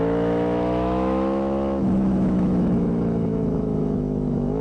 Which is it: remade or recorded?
remade